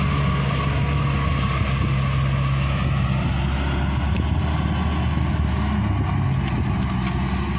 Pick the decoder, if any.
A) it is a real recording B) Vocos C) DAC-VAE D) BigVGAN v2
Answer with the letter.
A